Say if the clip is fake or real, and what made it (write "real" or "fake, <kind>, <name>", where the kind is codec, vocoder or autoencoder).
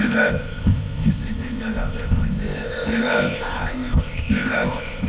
fake, codec, ZipCodec